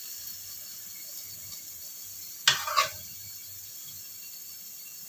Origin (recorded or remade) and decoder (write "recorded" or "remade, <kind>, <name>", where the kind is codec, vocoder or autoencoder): recorded